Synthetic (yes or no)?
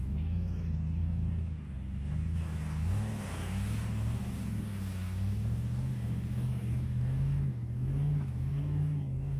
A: yes